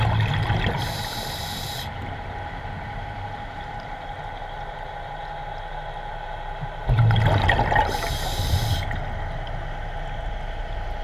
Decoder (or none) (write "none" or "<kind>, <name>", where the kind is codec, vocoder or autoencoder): none